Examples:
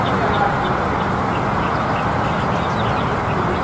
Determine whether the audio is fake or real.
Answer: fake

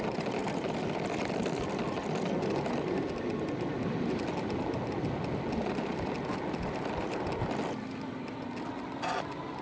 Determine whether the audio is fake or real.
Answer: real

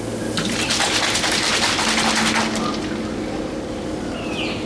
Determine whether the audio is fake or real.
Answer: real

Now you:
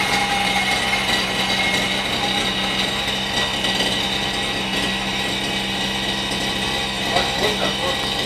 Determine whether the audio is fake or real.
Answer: real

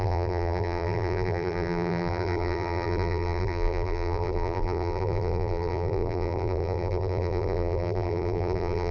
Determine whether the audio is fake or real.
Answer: fake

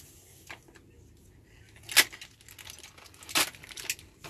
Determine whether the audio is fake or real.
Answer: real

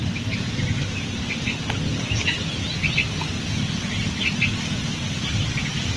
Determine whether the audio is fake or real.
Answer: real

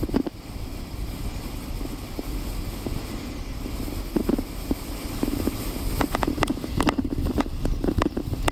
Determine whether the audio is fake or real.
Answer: real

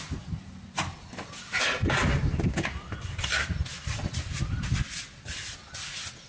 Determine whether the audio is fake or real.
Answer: real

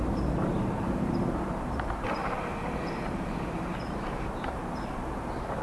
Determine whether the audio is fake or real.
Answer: fake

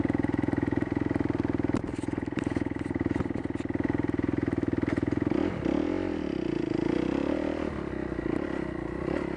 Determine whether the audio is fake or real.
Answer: fake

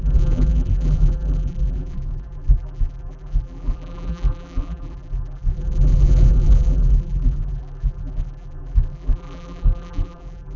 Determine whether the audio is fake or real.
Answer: fake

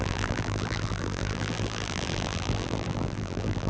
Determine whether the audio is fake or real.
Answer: fake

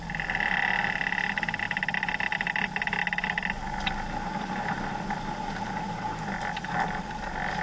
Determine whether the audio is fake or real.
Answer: real